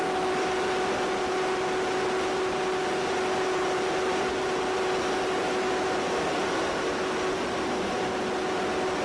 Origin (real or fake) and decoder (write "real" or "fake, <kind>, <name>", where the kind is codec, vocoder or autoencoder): real